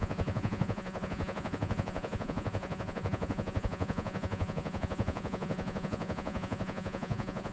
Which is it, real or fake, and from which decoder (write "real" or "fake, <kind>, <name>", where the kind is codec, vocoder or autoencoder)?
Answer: fake, vocoder, Vocos